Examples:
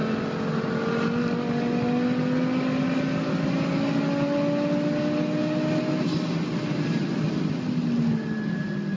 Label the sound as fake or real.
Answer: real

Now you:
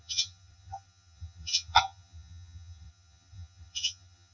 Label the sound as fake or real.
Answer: fake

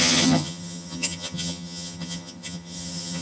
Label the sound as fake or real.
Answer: fake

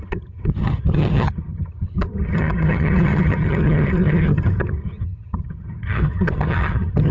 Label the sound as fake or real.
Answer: fake